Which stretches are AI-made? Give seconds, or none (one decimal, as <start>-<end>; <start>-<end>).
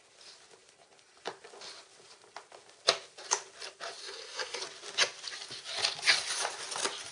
4.0-4.6